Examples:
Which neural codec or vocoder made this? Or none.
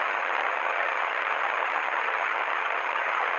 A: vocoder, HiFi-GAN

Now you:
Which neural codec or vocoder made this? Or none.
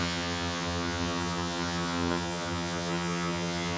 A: vocoder, HiFi-GAN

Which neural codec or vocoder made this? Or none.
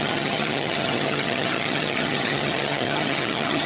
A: vocoder, HiFi-GAN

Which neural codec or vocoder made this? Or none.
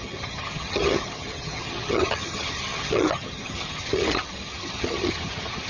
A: vocoder, HiFi-GAN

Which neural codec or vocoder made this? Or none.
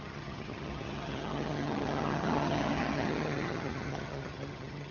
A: vocoder, HiFi-GAN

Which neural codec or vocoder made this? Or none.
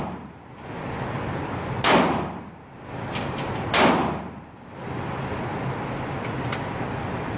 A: none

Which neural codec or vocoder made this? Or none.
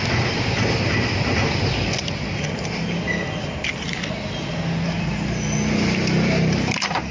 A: none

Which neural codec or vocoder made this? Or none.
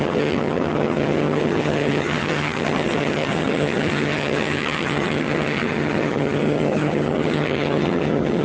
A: vocoder, HiFi-GAN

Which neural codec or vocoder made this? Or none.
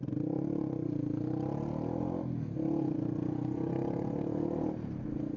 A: none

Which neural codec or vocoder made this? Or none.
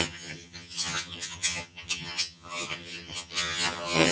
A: vocoder, HiFi-GAN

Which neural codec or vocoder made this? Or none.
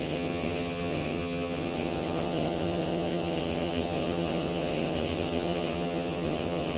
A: vocoder, HiFi-GAN